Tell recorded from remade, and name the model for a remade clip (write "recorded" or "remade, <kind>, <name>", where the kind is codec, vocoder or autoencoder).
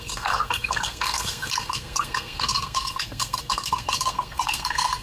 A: remade, codec, SNAC